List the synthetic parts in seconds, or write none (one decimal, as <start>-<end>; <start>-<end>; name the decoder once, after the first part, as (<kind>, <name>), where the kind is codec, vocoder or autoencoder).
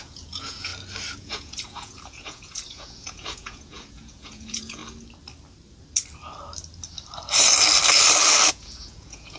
0.0-0.7 (vocoder, Vocos); 1.2-4.8; 8.5-9.4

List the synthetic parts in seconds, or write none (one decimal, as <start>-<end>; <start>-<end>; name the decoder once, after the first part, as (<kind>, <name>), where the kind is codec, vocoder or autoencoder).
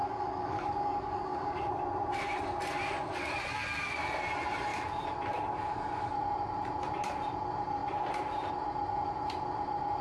0.0-1.8 (codec, DAC)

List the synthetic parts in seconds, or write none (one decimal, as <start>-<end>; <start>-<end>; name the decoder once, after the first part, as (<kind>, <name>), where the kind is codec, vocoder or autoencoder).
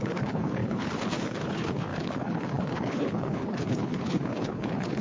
0.0-5.0 (codec, HILCodec)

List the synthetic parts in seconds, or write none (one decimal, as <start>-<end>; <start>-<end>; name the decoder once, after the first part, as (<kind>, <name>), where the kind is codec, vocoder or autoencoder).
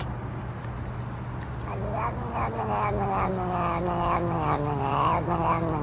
none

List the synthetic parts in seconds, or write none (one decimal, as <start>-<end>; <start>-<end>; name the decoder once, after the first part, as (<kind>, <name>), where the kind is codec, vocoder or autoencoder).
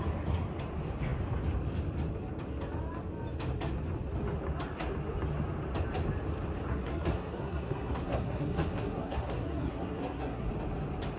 6.7-10.5 (codec, SNAC)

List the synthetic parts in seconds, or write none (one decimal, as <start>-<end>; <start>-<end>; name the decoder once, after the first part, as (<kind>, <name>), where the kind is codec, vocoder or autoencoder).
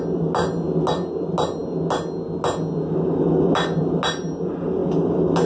none